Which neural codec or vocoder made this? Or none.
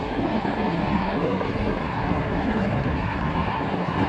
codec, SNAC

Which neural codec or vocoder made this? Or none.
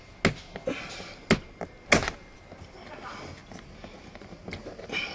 none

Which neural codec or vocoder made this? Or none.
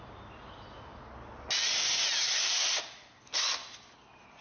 none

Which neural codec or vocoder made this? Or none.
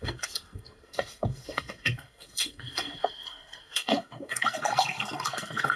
codec, SNAC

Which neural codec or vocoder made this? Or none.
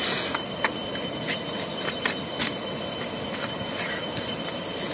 none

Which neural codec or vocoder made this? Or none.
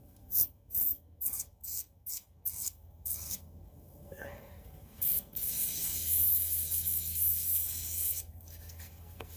codec, SNAC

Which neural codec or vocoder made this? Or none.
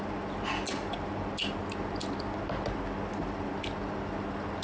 none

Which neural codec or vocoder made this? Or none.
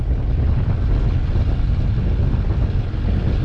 none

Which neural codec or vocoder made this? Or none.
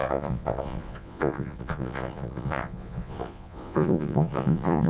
vocoder, Vocos